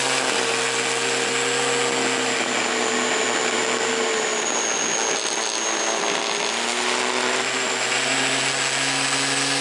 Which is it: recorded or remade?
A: recorded